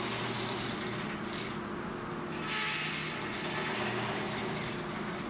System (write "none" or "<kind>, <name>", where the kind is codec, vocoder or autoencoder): none